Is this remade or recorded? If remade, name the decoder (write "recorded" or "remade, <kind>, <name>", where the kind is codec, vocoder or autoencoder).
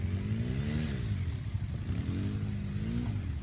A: recorded